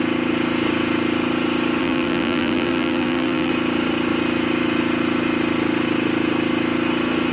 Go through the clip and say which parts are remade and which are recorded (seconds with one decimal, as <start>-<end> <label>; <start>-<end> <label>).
0.0-1.8 recorded; 1.8-3.5 remade; 3.5-7.3 recorded